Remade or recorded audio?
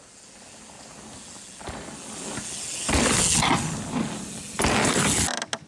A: recorded